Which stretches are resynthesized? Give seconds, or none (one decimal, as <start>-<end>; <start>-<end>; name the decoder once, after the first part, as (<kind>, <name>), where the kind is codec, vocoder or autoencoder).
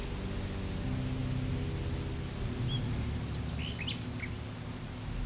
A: none